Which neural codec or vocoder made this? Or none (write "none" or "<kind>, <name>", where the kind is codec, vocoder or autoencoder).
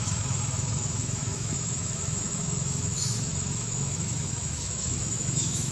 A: autoencoder, DAC-VAE